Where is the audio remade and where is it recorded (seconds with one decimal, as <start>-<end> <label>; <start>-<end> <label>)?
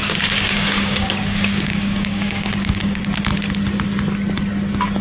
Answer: 0.0-3.0 remade; 3.0-5.0 recorded